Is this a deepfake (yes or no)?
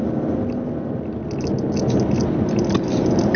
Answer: no